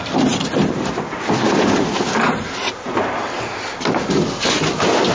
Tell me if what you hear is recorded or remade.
recorded